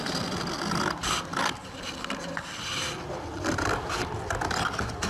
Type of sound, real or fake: real